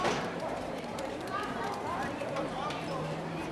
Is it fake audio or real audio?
fake